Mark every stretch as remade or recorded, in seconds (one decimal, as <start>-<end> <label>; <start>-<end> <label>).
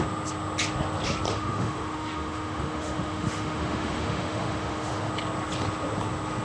0.0-1.3 recorded; 1.3-5.1 remade; 5.1-6.4 recorded